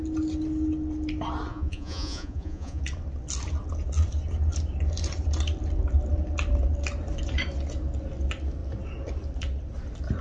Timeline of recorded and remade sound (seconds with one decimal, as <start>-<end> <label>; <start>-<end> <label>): 0.0-1.5 recorded; 1.5-2.8 remade; 2.8-10.2 recorded